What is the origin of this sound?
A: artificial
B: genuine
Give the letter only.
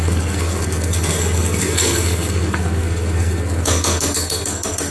A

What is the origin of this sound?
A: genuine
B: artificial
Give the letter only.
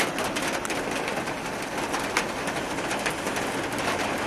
A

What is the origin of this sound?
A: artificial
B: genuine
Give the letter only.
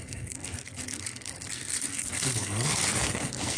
A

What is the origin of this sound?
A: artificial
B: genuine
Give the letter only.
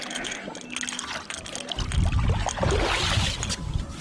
B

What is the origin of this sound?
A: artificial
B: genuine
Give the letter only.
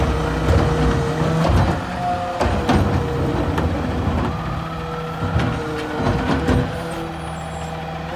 B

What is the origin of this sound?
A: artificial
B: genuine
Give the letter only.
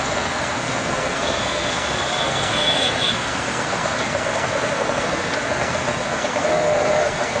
A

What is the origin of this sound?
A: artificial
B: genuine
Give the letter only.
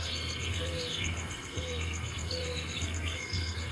A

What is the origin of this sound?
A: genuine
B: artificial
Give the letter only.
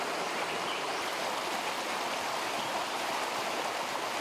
A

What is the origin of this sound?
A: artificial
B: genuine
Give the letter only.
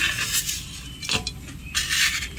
B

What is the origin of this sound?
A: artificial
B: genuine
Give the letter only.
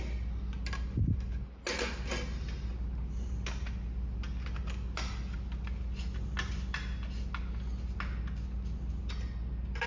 B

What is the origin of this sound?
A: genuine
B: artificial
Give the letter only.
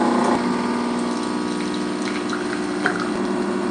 A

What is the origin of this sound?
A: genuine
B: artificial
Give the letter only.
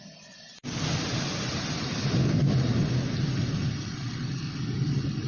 A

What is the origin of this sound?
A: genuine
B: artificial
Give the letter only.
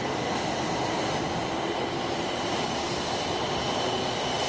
A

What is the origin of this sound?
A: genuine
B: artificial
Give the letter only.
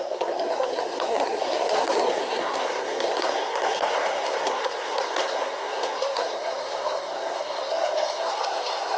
B